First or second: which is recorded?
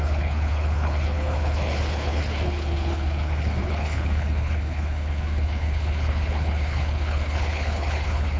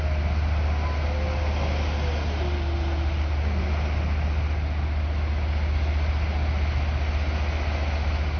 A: second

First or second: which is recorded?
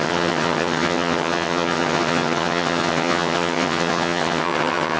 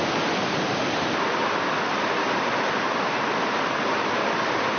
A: second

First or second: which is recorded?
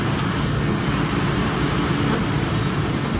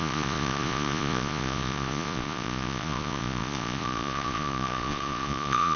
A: first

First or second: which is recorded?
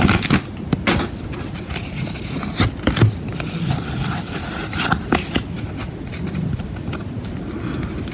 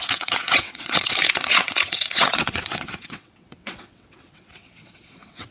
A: first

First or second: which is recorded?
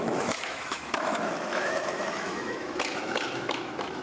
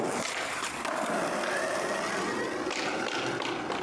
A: second